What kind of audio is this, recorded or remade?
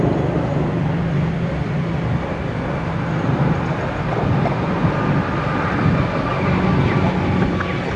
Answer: recorded